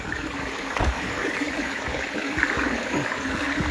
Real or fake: fake